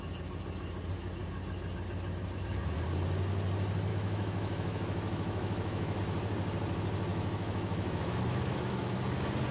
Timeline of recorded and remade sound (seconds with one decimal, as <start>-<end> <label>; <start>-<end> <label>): 0.0-3.9 recorded; 3.9-6.0 remade; 6.0-7.1 recorded; 7.1-9.0 remade; 9.0-9.5 recorded